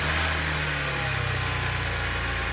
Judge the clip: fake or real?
real